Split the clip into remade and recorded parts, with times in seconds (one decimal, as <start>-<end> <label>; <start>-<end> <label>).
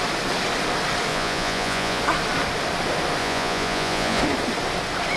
0.0-1.1 recorded; 1.1-2.0 remade; 2.0-3.2 recorded; 3.2-4.2 remade; 4.2-5.2 recorded